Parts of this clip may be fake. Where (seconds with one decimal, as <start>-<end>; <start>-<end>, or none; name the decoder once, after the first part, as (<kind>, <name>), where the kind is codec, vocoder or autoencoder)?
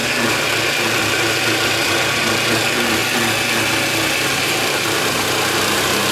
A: 0.0-3.0 (vocoder, BigVGAN v2); 4.4-6.1